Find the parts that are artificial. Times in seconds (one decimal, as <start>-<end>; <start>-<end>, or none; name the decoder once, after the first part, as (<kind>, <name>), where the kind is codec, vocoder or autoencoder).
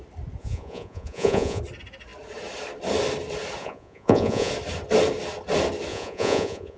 0.4-1.6 (vocoder, Vocos); 3.6-4.5; 5.9-6.8